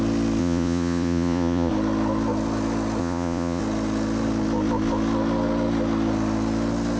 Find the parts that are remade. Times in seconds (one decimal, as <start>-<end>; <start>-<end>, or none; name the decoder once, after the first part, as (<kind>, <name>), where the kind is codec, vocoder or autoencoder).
0.4-1.7 (vocoder, Vocos); 3.0-3.6